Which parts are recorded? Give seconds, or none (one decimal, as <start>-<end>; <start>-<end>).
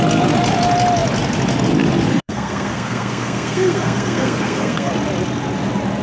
0.0-2.1; 4.9-6.0